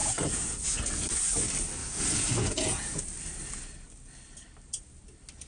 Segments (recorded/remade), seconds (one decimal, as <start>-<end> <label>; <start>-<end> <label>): 0.0-0.9 remade; 0.9-1.8 recorded; 1.8-3.0 remade; 3.0-5.5 recorded